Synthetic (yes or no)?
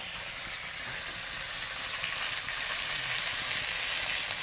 no